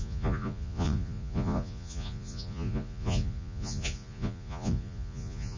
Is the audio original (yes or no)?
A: no